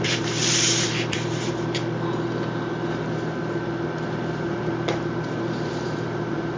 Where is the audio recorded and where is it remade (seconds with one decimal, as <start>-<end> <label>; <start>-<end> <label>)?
0.0-1.8 remade; 1.8-4.3 recorded; 4.3-6.6 remade